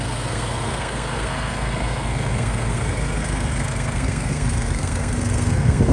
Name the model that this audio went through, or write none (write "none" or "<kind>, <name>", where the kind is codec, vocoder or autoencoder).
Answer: codec, SNAC